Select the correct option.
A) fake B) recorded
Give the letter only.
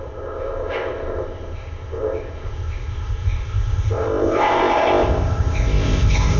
A